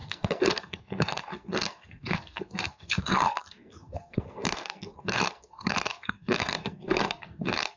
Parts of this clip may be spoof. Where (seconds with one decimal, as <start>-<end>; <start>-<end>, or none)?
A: 0.0-7.8